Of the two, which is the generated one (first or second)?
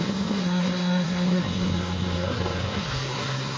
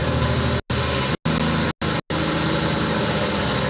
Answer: first